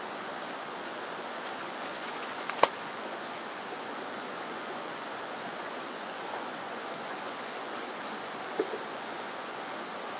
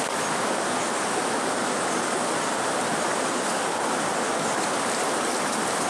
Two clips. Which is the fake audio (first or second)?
first